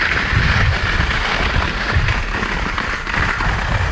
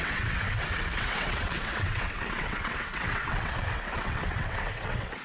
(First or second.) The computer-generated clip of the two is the second